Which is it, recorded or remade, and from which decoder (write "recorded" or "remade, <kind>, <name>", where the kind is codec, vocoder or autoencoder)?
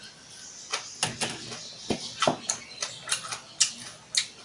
recorded